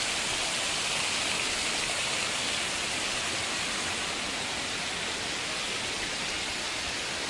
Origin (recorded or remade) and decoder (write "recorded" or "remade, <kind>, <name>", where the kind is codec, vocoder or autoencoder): recorded